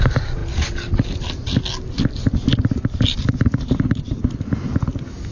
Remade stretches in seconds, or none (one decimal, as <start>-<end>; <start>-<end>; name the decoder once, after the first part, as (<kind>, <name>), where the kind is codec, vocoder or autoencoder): 0.0-0.4 (vocoder, BigVGAN v2); 3.6-4.2